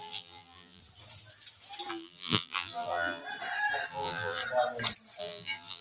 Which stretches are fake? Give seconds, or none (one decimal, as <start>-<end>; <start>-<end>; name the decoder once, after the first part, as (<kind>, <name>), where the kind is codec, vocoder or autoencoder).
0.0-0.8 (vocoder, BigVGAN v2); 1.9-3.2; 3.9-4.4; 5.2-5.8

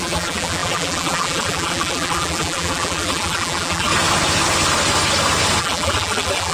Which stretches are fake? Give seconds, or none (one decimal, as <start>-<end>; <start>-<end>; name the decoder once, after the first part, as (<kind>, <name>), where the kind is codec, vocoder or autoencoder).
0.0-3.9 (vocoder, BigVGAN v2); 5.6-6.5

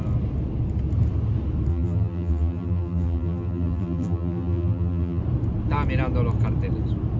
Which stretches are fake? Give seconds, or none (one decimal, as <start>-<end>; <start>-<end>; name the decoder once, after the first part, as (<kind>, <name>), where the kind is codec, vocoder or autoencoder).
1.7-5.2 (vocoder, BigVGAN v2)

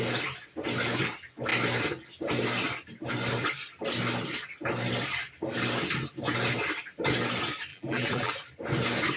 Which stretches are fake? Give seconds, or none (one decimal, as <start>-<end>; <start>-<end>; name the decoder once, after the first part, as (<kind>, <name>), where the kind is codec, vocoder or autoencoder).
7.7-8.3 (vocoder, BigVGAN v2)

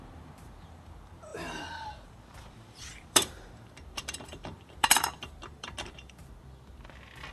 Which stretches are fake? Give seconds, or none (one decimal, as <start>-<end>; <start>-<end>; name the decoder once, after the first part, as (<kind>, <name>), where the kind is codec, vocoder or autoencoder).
0.0-6.2 (vocoder, BigVGAN v2)

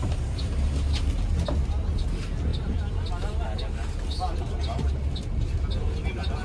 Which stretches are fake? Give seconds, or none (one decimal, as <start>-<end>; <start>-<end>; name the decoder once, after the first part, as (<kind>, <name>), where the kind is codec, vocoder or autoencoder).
2.5-3.1 (vocoder, BigVGAN v2)